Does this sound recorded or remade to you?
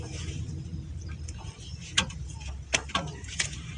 remade